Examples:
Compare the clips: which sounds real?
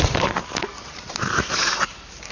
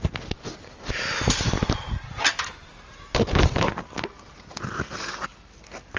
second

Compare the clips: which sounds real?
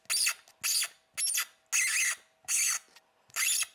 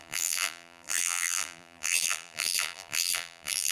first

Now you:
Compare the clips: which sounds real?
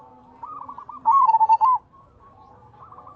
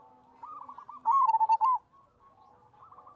second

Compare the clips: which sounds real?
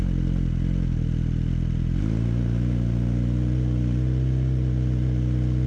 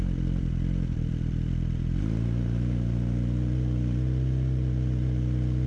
first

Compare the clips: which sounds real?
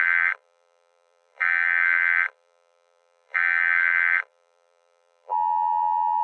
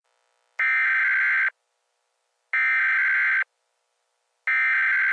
second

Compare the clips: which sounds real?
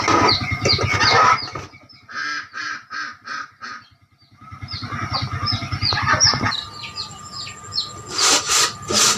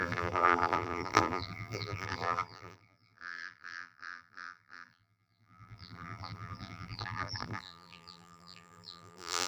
first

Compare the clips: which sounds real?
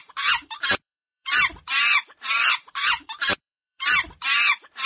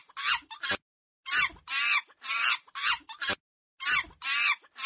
second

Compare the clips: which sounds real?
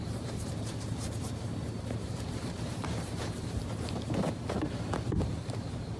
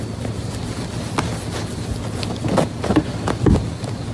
second